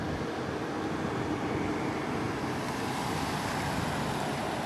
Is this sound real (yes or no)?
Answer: yes